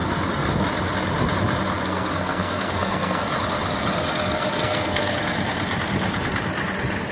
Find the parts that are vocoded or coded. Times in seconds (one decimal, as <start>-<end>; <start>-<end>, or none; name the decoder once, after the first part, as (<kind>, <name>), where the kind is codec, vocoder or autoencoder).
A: 1.8-3.2 (codec, SNAC); 4.3-5.2